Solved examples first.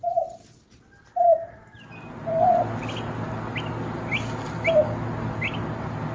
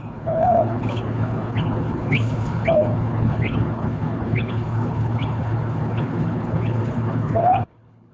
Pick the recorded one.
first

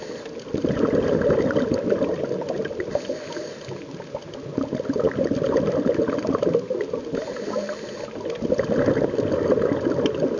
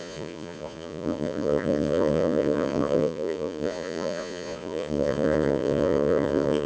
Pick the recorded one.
first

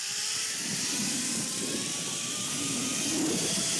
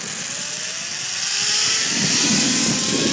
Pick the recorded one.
second